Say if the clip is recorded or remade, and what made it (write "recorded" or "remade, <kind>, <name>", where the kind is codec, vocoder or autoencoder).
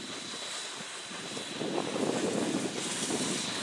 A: recorded